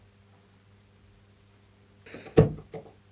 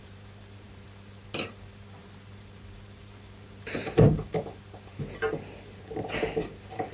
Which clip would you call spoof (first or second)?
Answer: second